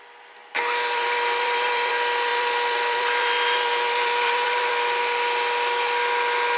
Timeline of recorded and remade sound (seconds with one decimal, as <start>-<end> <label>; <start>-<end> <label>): 0.0-0.4 recorded; 0.4-1.9 remade; 1.9-2.3 recorded; 2.3-4.7 remade; 4.7-6.6 recorded